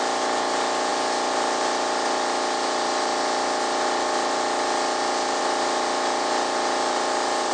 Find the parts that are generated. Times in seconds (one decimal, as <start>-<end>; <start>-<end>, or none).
none